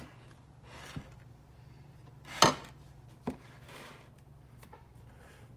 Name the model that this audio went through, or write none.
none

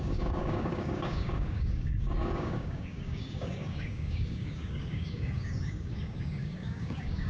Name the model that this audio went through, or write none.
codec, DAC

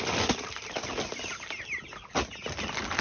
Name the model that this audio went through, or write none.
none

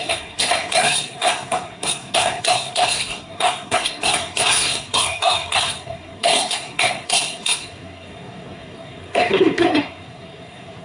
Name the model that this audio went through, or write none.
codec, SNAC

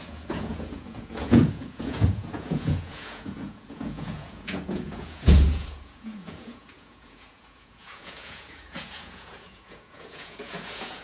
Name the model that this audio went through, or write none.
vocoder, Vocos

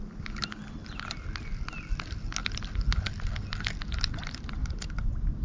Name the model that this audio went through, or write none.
none